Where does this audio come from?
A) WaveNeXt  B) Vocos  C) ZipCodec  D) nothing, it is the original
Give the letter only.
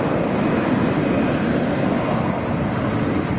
D